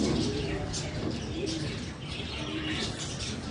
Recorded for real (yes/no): yes